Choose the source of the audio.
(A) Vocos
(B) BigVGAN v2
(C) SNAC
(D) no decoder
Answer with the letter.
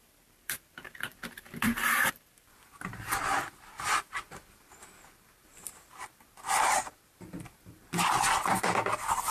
B